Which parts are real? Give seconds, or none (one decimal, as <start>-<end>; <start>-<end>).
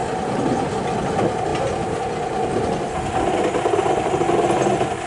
0.0-5.1